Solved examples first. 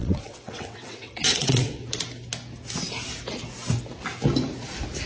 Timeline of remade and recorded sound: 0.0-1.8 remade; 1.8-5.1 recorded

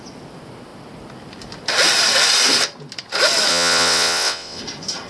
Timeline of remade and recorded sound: 0.0-3.5 recorded; 3.5-4.6 remade; 4.6-5.1 recorded

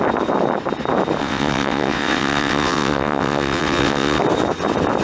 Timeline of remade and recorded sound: 0.0-1.2 recorded; 1.2-4.2 remade; 4.2-5.0 recorded

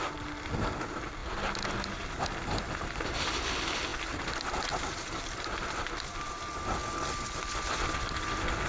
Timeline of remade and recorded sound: 0.0-8.7 recorded

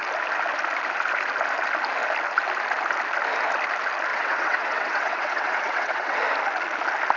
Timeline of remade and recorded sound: 0.0-4.1 recorded; 4.1-6.2 remade; 6.2-7.2 recorded

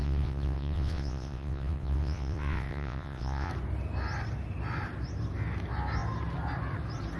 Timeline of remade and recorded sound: 0.0-3.5 remade; 3.5-7.2 recorded

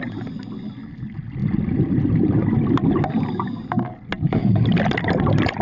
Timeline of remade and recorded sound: 0.0-5.6 recorded

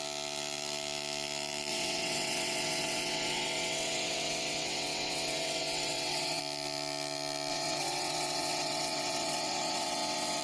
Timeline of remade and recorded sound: 0.0-1.7 recorded; 1.7-6.4 remade; 6.4-7.5 recorded; 7.5-10.4 remade